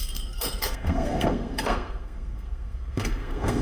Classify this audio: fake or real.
fake